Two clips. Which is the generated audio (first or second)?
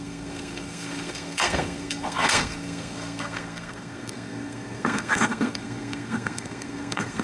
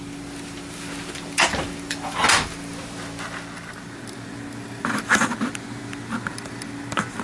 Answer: first